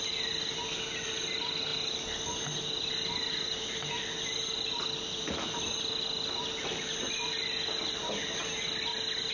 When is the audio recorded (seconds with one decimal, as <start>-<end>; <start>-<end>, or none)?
0.0-9.3